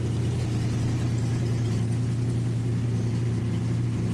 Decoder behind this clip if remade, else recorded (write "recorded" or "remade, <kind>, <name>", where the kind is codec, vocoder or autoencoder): recorded